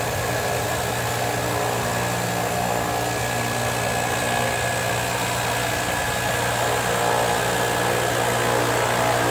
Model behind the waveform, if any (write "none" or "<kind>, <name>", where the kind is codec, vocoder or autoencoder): none